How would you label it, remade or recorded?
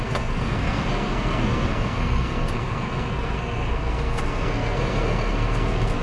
remade